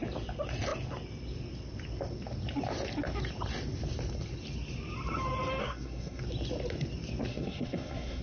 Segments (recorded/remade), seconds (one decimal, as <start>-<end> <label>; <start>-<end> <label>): 0.0-5.6 recorded; 5.6-6.2 remade; 6.2-7.3 recorded; 7.3-8.2 remade